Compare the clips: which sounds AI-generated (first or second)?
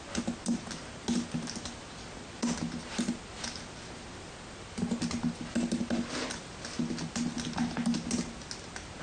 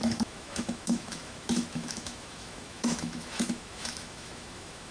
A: second